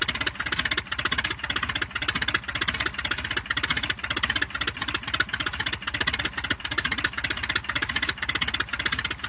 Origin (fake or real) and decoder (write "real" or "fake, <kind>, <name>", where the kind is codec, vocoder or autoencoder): real